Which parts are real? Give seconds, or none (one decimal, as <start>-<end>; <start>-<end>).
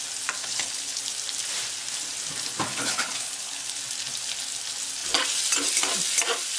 0.0-0.4; 1.0-2.7; 3.8-6.6